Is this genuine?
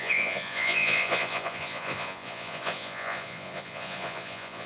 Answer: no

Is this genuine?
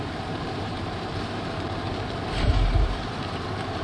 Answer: no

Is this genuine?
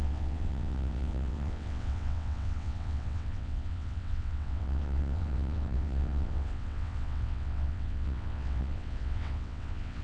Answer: no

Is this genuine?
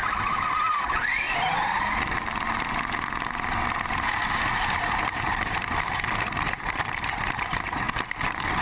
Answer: yes